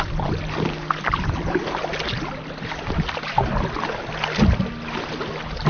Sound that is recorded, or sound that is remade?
recorded